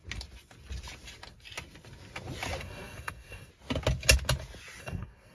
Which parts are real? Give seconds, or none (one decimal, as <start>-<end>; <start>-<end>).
0.0-2.6; 3.5-4.8